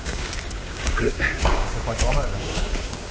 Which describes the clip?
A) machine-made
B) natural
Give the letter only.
A